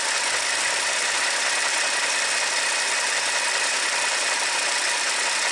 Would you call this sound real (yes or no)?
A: no